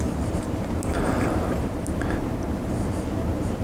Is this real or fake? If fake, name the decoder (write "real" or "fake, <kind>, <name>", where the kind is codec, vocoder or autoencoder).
fake, vocoder, BigVGAN v2